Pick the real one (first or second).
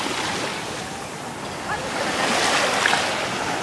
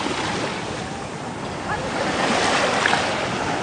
first